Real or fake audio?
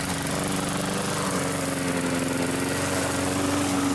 real